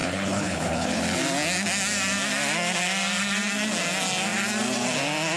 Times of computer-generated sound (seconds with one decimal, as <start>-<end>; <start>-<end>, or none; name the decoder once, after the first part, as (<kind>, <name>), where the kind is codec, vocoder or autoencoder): 0.0-1.0 (codec, HILCodec)